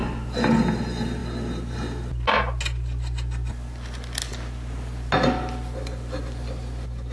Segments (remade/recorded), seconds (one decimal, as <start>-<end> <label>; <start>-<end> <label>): 0.0-7.1 recorded